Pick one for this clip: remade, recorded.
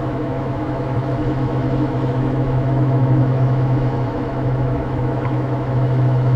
remade